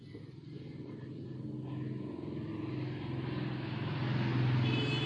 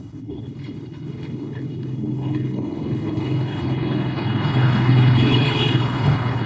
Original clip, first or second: first